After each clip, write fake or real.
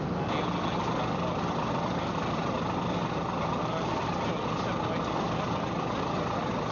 real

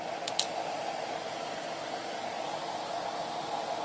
real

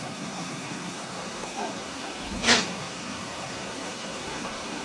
fake